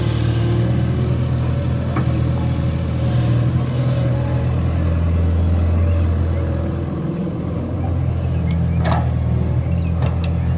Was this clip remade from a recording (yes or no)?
no